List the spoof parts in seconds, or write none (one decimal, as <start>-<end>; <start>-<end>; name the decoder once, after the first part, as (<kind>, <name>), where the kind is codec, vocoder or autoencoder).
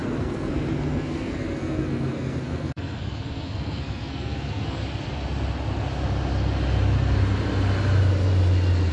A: 0.0-4.8 (codec, SNAC)